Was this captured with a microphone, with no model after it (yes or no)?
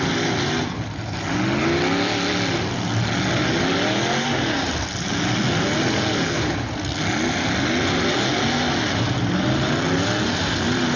yes